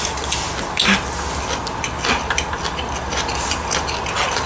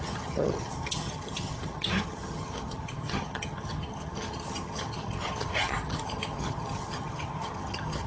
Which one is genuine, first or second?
first